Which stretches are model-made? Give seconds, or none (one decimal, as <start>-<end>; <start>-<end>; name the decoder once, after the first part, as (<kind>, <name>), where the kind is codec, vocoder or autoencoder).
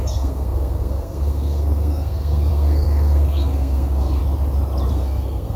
0.0-4.2 (codec, SNAC); 4.9-5.6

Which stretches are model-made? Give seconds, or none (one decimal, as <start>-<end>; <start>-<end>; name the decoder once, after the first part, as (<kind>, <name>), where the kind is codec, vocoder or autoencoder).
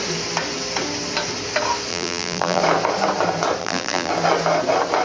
1.9-2.6 (vocoder, BigVGAN v2); 3.6-4.1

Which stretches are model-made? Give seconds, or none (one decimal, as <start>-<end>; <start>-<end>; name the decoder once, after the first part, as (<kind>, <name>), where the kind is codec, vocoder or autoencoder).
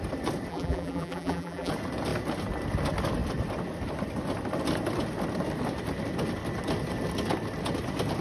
0.5-1.7 (vocoder, BigVGAN v2)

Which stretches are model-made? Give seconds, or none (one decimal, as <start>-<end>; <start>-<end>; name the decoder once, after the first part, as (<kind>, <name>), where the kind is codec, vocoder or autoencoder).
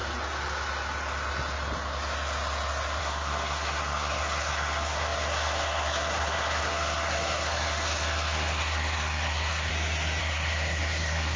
3.0-9.7 (codec, SNAC); 10.2-11.4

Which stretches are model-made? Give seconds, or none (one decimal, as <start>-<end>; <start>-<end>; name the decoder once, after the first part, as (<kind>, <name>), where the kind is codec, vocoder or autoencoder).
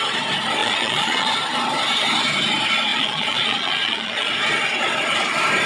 0.6-1.3 (vocoder, Vocos); 2.9-4.3